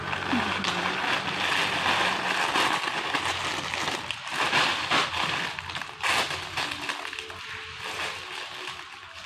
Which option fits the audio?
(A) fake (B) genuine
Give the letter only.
B